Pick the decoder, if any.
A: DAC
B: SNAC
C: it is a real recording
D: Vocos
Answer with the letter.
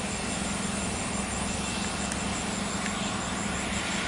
C